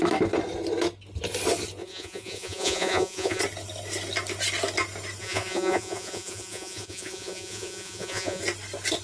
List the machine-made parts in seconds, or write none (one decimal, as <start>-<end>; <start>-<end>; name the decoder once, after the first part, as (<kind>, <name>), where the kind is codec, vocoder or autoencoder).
1.8-3.4 (vocoder, Vocos); 5.2-8.4